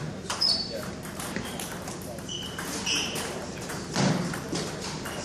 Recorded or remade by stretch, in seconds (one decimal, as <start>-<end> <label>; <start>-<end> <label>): 0.0-0.6 recorded; 0.6-3.7 remade; 3.7-5.2 recorded